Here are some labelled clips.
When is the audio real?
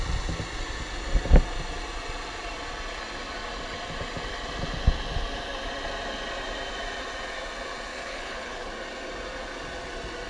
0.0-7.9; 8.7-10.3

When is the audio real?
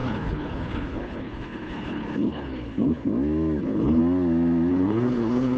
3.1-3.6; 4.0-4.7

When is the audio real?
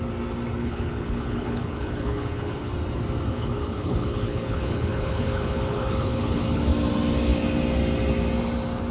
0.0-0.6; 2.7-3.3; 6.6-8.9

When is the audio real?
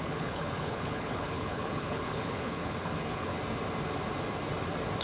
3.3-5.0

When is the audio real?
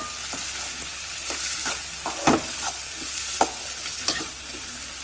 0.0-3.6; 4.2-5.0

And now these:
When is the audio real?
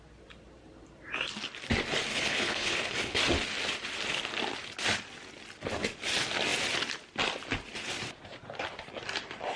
0.0-2.1; 3.2-9.6